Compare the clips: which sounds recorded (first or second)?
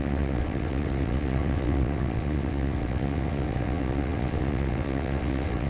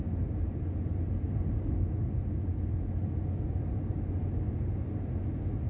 second